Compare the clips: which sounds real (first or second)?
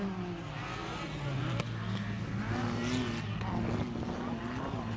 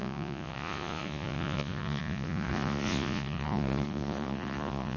first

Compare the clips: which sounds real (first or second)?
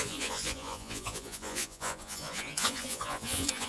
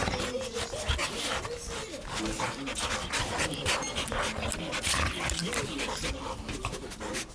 second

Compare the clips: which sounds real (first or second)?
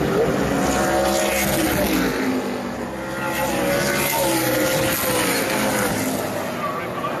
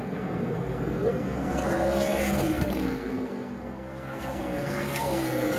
first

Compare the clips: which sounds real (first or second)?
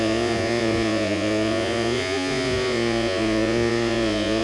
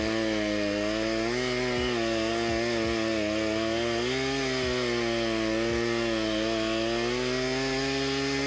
second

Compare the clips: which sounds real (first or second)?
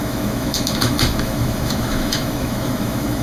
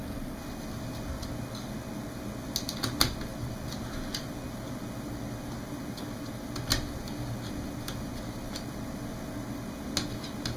second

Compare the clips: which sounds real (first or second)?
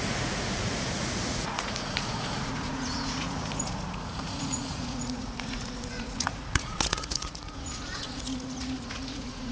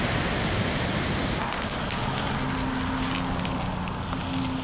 second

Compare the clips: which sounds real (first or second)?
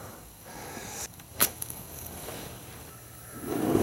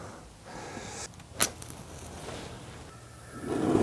second